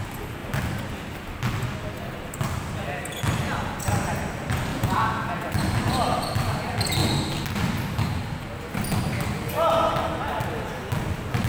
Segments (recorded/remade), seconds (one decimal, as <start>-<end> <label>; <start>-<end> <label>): 0.0-4.7 recorded; 4.7-5.5 remade; 5.5-11.5 recorded